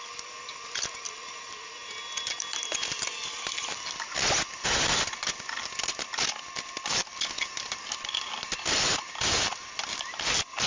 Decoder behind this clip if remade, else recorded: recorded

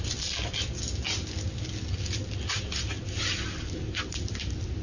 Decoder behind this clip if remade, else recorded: recorded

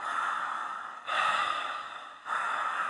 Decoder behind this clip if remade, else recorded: remade, codec, DAC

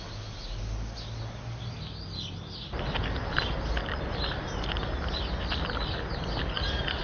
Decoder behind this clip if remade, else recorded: recorded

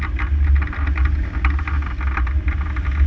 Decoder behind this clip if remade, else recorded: recorded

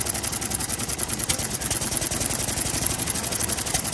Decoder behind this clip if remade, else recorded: recorded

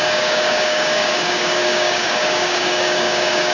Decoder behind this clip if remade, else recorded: remade, codec, DAC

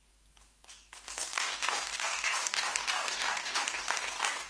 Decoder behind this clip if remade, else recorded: remade, codec, DAC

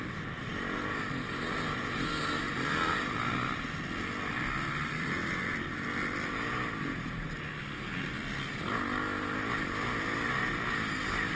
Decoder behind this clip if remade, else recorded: recorded